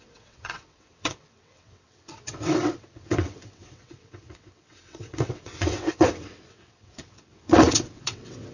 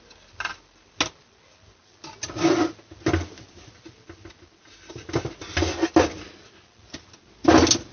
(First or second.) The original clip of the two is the second